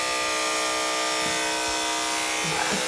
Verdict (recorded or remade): recorded